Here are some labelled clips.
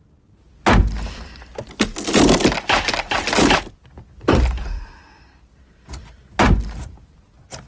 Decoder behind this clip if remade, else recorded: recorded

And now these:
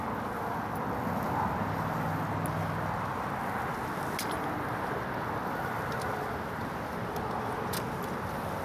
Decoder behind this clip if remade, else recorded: recorded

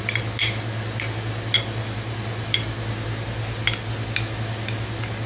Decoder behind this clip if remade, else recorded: recorded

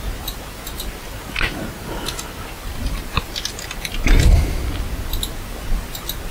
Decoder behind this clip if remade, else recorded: recorded